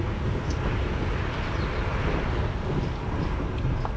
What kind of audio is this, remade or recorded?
recorded